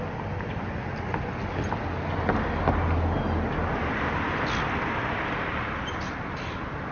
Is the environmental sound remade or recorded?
recorded